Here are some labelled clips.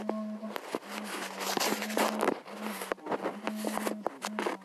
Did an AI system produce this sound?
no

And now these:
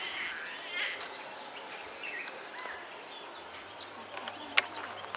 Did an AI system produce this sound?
no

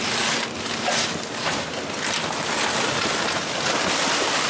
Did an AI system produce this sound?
no